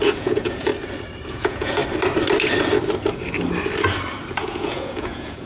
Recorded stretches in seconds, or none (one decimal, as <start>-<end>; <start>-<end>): 0.7-1.3; 1.8-4.4